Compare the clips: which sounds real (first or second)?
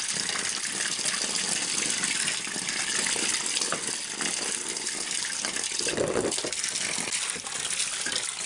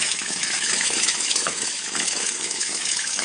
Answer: first